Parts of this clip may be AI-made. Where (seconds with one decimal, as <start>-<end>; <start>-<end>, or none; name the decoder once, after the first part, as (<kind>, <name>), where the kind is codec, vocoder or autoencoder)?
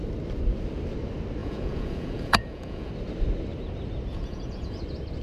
1.4-2.9 (vocoder, Vocos); 4.1-4.8